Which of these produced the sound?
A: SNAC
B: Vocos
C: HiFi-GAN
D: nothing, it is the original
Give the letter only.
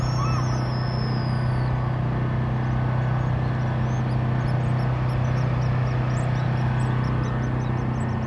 D